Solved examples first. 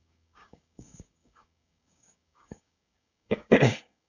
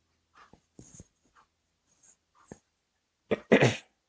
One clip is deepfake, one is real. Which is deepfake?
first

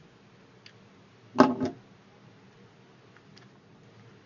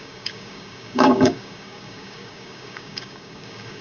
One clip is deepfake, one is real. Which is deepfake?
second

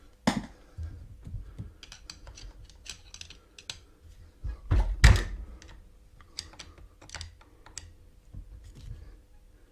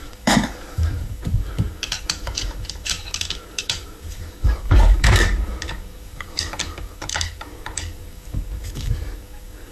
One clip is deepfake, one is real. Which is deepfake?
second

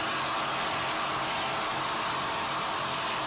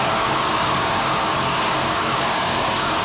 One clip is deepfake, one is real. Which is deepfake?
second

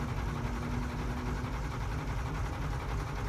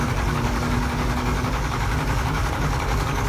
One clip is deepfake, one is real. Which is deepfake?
second